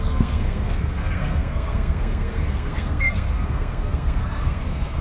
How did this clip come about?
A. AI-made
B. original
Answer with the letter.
A